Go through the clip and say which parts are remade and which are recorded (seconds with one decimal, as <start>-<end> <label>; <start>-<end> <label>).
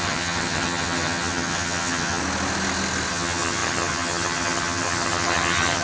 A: 0.0-2.2 remade; 2.2-3.1 recorded; 3.1-5.8 remade